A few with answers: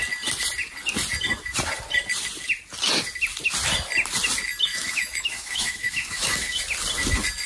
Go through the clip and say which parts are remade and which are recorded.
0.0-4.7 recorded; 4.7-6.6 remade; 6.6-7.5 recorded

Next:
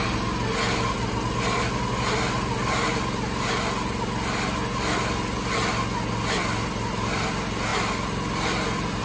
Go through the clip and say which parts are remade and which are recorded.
0.0-9.0 recorded

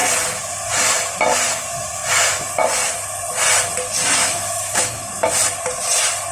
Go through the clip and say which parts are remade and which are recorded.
0.0-4.2 recorded; 4.2-5.3 remade; 5.3-6.3 recorded

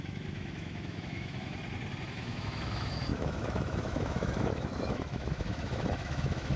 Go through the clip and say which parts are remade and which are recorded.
0.0-1.6 remade; 1.6-2.1 recorded; 2.1-6.6 remade